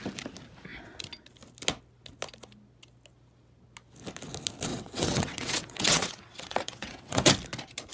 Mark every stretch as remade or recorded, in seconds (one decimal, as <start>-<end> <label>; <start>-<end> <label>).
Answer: 0.0-4.7 recorded; 4.7-7.3 remade; 7.3-7.9 recorded